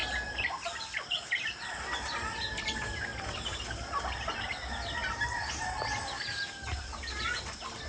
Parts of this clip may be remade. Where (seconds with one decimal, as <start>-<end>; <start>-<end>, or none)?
none